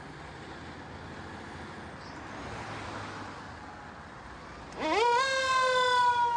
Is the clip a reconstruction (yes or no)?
no